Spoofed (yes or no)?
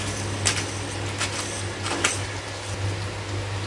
no